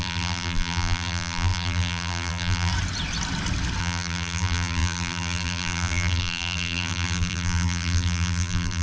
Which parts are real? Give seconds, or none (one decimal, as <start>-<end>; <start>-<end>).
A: 2.7-3.8